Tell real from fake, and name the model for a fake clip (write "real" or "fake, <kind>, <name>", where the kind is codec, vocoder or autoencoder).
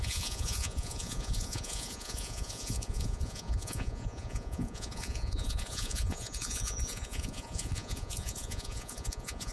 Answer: fake, vocoder, Vocos